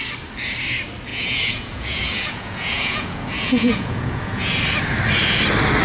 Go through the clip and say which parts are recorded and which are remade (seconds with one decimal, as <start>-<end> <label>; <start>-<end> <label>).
0.0-1.1 recorded; 1.1-4.6 remade; 4.6-5.8 recorded